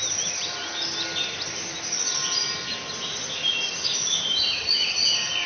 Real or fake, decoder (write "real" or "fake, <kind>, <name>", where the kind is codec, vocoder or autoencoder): real